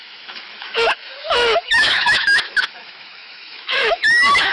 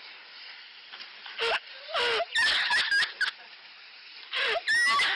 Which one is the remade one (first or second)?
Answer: first